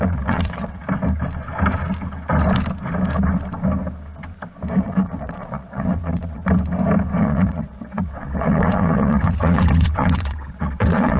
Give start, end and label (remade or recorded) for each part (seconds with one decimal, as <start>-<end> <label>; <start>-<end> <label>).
0.0-0.8 remade; 0.8-4.8 recorded; 4.8-6.4 remade; 6.4-7.2 recorded; 7.2-11.2 remade